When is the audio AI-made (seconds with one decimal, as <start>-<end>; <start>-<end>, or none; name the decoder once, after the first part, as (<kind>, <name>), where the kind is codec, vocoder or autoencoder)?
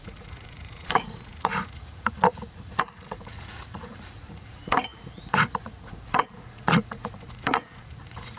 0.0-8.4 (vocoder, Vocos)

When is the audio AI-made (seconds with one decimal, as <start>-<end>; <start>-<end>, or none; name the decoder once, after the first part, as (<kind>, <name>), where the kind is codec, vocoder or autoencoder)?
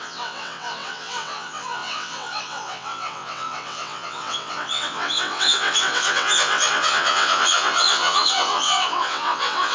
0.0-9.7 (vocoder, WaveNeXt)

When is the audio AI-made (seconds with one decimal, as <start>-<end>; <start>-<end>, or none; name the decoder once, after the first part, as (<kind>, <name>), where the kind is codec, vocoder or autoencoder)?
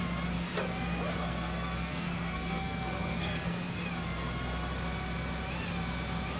1.2-3.8 (codec, SNAC)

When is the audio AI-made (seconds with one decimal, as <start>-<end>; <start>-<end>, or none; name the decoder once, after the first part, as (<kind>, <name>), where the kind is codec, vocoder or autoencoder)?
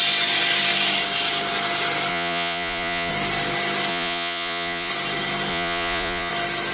2.1-3.1 (vocoder, Vocos); 3.9-4.9; 5.5-6.3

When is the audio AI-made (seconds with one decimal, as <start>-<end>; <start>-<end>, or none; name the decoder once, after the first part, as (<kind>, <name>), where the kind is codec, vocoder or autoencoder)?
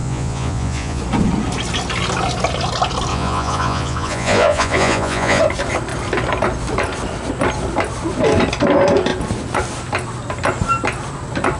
0.0-1.0 (vocoder, Vocos); 3.1-5.4